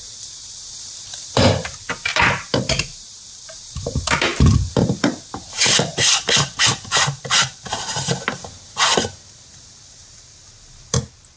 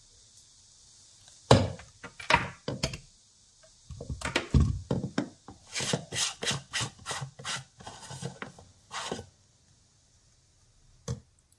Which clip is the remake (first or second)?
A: first